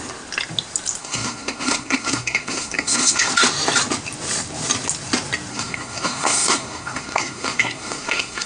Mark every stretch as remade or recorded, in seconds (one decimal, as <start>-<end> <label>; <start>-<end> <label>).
0.0-1.0 recorded; 1.0-3.3 remade; 3.3-5.5 recorded; 5.5-8.5 remade

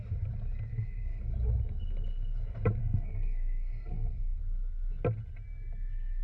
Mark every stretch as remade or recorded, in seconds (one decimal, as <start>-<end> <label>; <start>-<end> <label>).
0.0-0.7 recorded; 0.7-1.2 remade; 1.2-2.8 recorded; 2.8-4.4 remade; 4.4-6.2 recorded

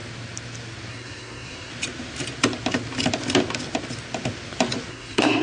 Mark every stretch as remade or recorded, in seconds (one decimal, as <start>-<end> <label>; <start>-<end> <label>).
0.0-0.9 recorded; 0.9-1.7 remade; 1.7-4.9 recorded; 4.9-5.4 remade